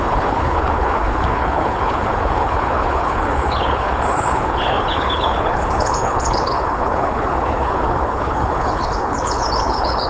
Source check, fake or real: fake